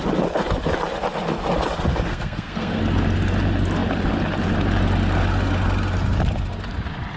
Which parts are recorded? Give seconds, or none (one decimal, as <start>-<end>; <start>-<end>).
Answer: 0.0-2.1; 2.8-7.2